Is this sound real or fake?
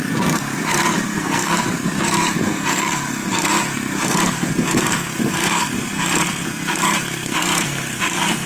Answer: fake